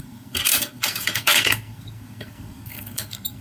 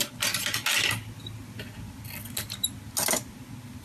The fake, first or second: first